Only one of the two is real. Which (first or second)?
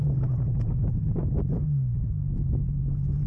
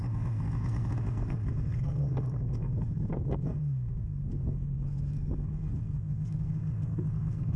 first